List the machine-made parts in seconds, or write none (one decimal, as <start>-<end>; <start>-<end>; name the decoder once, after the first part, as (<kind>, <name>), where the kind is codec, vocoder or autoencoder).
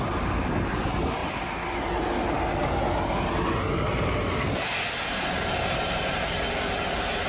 none